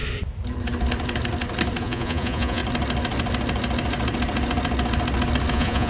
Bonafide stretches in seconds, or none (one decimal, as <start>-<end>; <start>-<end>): 0.0-1.8; 2.6-5.5